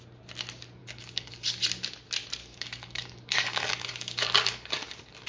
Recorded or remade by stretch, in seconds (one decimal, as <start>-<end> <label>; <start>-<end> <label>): 0.0-0.8 recorded; 0.8-1.6 remade; 1.6-2.4 recorded; 2.4-5.3 remade